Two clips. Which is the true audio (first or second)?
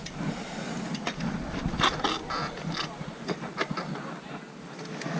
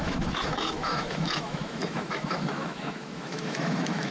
first